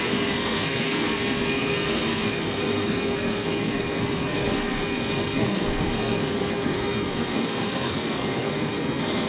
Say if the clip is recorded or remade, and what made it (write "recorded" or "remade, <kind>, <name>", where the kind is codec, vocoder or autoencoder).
remade, codec, SNAC